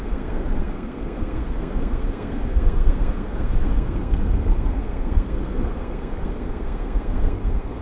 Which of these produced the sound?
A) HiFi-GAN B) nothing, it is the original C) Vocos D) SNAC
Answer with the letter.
D